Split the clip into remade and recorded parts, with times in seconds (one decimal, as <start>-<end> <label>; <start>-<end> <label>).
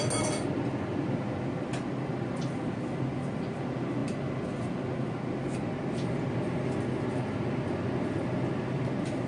0.0-9.3 recorded